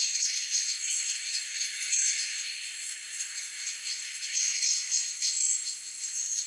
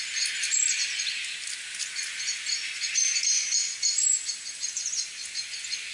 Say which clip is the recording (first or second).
second